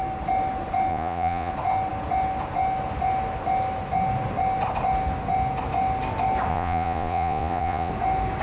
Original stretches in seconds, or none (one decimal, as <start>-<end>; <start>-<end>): 0.0-0.9; 1.5-6.5; 7.9-8.4